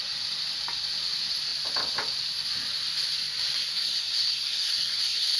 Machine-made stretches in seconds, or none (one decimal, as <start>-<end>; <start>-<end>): 3.7-5.4